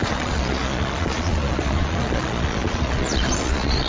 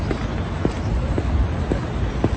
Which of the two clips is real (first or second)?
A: second